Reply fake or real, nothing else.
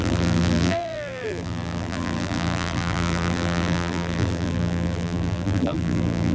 fake